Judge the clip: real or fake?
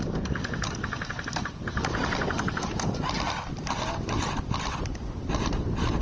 real